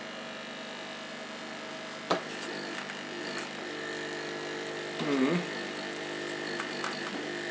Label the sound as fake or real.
real